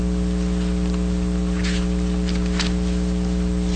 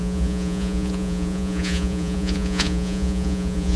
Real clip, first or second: first